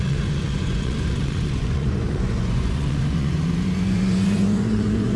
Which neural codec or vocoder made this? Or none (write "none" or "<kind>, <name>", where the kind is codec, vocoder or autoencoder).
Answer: vocoder, Vocos